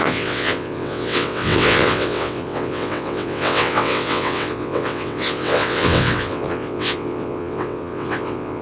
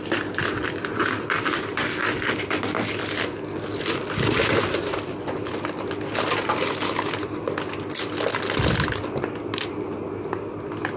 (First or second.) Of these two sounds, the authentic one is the second